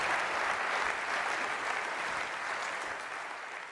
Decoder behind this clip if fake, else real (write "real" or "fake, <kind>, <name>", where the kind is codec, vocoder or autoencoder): real